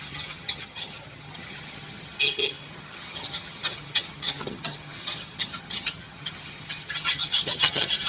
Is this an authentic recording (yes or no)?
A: no